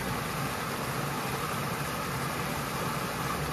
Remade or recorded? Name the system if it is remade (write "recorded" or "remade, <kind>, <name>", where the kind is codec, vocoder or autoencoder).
recorded